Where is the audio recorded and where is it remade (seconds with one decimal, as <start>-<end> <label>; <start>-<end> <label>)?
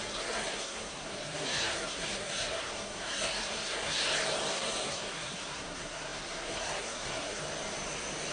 0.0-4.0 remade; 4.0-4.5 recorded; 4.5-7.4 remade; 7.4-8.3 recorded